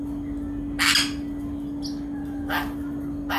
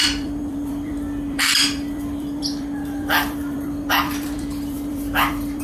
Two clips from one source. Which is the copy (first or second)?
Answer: second